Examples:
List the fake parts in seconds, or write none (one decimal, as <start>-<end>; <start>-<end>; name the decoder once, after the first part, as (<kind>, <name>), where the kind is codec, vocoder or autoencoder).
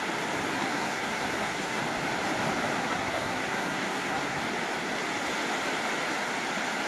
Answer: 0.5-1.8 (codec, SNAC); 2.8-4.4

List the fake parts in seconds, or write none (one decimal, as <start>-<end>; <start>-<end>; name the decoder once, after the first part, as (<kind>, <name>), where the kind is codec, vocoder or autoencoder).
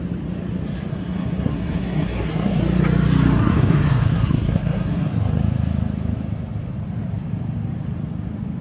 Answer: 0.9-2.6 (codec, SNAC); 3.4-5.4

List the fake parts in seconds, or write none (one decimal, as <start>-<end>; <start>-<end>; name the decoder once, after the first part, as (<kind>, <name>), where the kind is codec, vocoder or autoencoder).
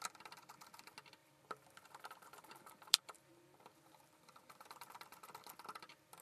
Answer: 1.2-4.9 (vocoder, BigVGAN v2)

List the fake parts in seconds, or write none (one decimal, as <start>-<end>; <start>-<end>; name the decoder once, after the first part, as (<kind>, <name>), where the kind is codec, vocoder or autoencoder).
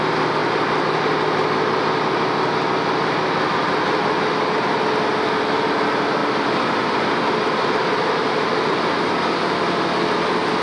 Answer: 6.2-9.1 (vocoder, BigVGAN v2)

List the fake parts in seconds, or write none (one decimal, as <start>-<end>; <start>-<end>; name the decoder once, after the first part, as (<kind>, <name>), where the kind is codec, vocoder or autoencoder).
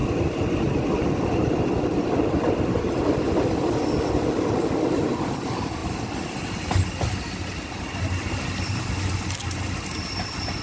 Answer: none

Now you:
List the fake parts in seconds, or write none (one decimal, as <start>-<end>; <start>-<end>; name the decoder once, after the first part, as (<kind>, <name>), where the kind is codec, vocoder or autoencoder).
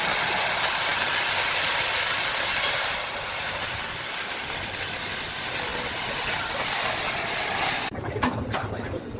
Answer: none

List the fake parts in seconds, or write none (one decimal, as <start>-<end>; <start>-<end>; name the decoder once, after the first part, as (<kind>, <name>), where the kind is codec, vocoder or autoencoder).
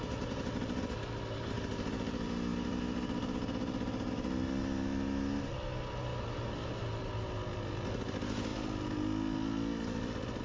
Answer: none